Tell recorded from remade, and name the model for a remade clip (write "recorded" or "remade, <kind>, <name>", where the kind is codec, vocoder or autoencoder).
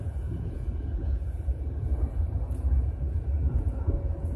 remade, vocoder, Vocos